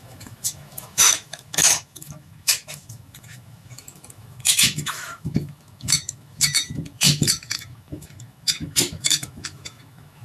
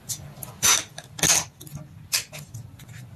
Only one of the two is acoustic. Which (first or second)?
second